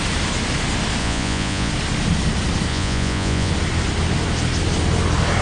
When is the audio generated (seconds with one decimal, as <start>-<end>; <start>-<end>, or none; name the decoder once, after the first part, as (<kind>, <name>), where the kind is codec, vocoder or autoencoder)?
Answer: 1.0-1.7 (vocoder, Vocos); 2.7-3.5